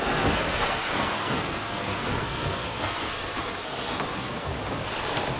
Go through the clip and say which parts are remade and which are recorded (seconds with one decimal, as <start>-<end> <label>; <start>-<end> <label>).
0.0-4.5 remade; 4.5-5.4 recorded